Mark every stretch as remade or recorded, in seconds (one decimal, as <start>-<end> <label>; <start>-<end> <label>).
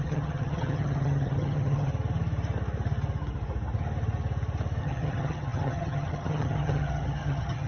0.0-1.9 remade; 1.9-4.8 recorded; 4.8-7.7 remade